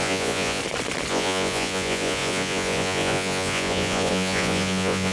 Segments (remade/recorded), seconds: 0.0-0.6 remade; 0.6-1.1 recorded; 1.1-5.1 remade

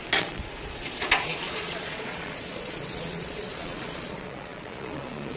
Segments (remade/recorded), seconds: 0.0-5.4 remade

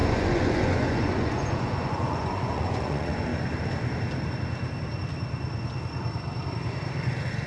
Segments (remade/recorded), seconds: 0.0-3.3 remade; 3.3-7.5 recorded

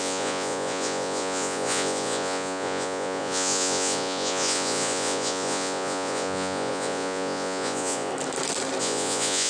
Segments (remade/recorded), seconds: 0.0-8.1 remade; 8.1-8.8 recorded; 8.8-9.5 remade

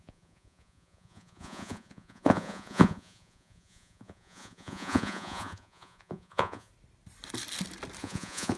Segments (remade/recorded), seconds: 0.0-6.7 remade; 6.7-8.0 recorded; 8.0-8.6 remade

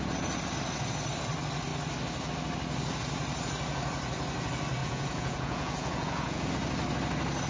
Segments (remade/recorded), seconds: 0.0-4.8 recorded; 4.8-6.5 remade; 6.5-7.5 recorded

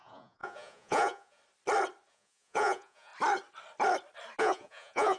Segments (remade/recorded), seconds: 0.0-1.4 remade; 1.4-2.1 recorded; 2.1-3.1 remade; 3.1-4.4 recorded; 4.4-5.2 remade

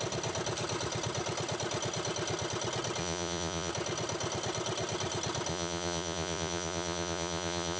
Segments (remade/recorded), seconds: 0.0-3.0 recorded; 3.0-3.7 remade; 3.7-5.5 recorded; 5.5-7.8 remade